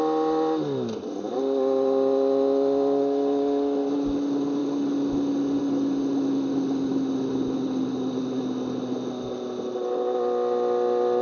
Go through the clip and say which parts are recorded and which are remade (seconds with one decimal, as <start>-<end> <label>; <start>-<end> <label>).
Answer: 0.0-11.2 recorded